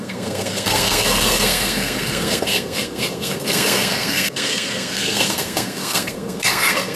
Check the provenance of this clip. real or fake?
fake